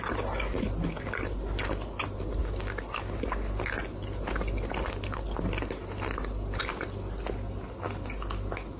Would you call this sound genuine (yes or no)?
yes